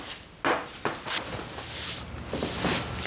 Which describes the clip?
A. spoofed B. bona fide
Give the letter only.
B